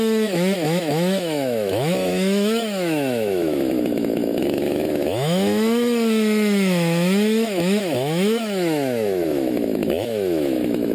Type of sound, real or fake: fake